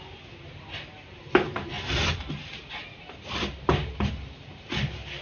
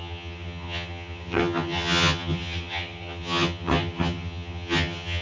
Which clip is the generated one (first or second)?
second